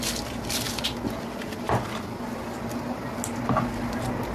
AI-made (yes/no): no